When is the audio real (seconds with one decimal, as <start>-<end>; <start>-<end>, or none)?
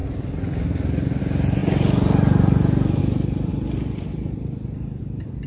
0.0-5.5